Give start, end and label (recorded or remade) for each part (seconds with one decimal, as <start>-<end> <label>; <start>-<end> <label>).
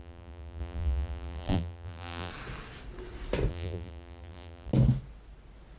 0.0-2.3 remade; 2.3-3.5 recorded; 3.5-4.7 remade; 4.7-5.8 recorded